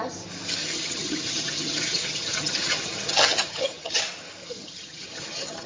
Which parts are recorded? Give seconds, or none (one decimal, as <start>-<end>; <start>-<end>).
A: 0.0-0.6; 4.0-4.4